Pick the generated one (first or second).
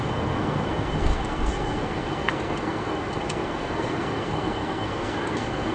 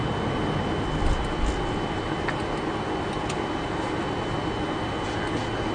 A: first